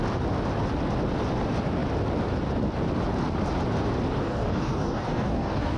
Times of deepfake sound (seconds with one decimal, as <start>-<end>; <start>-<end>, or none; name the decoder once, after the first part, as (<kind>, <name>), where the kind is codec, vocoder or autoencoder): 4.2-5.8 (codec, DAC)